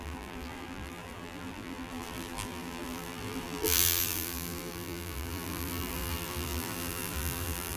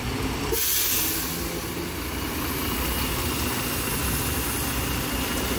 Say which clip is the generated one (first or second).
first